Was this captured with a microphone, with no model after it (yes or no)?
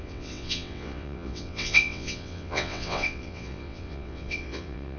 no